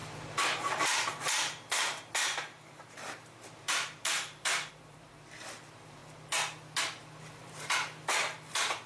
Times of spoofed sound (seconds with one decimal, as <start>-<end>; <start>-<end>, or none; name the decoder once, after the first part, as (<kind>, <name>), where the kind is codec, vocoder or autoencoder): 0.0-6.0 (vocoder, BigVGAN v2); 7.2-8.9